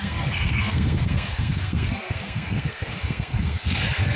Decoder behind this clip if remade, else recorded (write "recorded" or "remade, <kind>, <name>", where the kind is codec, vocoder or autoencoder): remade, codec, SNAC